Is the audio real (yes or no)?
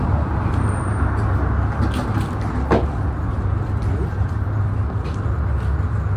yes